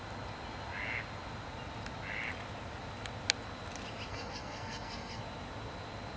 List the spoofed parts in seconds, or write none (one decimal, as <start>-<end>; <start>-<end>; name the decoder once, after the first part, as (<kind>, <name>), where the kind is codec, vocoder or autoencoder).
4.1-5.2 (codec, SNAC)